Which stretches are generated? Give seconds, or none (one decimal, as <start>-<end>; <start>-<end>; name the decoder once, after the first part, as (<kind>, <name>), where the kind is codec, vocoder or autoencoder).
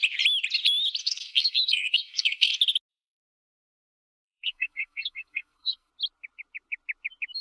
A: 1.0-2.5 (codec, SNAC); 2.9-5.9